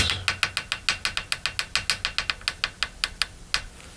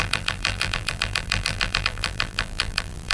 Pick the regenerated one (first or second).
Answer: second